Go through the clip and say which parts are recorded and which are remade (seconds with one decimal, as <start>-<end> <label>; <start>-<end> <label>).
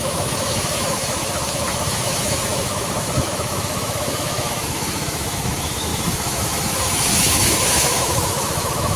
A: 0.0-9.0 remade